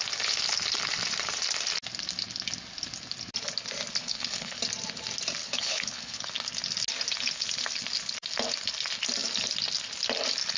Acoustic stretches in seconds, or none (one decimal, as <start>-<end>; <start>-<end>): 0.0-4.0; 4.6-5.4; 6.3-10.6